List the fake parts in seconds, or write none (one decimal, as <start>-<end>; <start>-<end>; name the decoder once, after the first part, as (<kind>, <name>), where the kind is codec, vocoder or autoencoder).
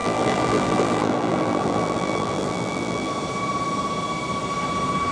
0.0-3.1 (vocoder, BigVGAN v2)